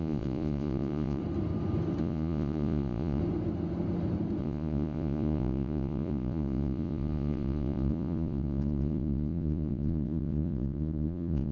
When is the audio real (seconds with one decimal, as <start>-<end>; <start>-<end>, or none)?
1.2-2.0; 3.2-4.4